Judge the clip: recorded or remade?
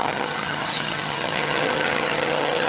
remade